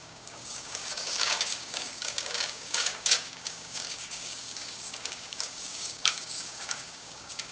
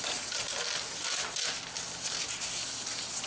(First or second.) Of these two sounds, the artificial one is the first